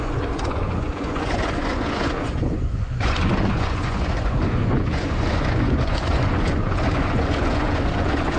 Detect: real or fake fake